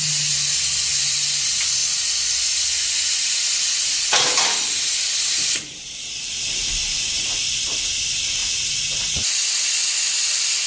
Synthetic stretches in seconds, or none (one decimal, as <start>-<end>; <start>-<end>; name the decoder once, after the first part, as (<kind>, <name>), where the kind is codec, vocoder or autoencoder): 1.8-3.6 (vocoder, Vocos); 8.4-9.3